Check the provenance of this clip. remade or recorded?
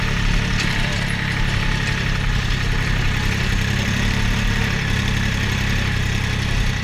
recorded